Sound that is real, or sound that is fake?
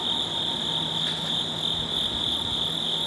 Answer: real